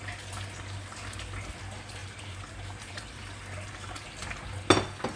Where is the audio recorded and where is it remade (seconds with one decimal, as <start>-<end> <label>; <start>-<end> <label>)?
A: 0.0-2.0 recorded; 2.0-3.0 remade; 3.0-5.2 recorded